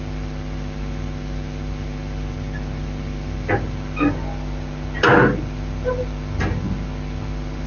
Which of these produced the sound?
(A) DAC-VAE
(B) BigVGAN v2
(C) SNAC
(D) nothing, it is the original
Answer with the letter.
D